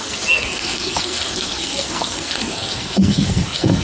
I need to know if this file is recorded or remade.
remade